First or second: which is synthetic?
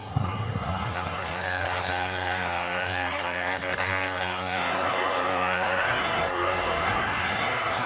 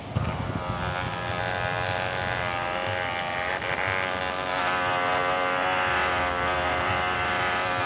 first